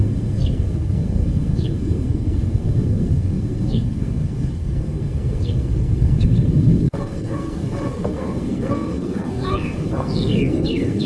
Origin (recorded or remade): remade